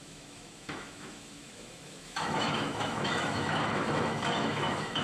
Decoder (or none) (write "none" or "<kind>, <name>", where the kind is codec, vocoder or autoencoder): autoencoder, DAC-VAE